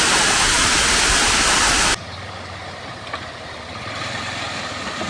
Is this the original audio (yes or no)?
no